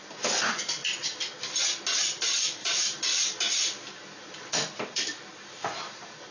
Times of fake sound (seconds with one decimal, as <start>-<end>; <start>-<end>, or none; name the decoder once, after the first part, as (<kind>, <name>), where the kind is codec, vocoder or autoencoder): 2.6-4.6 (vocoder, BigVGAN v2); 5.3-6.3